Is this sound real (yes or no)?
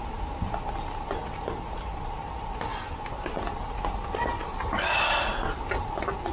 yes